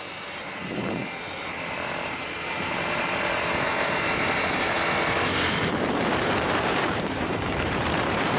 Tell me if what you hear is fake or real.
fake